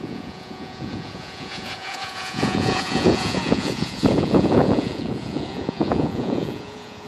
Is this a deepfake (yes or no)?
yes